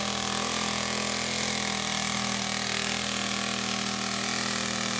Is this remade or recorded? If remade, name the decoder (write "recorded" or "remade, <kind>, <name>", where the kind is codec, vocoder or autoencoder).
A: recorded